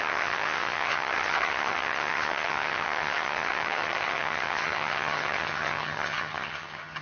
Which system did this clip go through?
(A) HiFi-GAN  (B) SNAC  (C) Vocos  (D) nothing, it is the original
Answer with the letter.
A